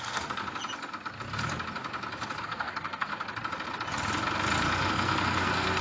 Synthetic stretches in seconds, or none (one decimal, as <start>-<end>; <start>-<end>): 0.0-0.4; 2.4-3.1; 4.9-5.8